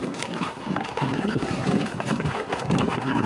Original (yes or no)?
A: no